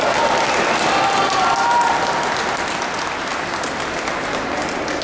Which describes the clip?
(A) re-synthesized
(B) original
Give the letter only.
B